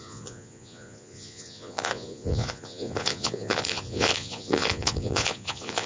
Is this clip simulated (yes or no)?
yes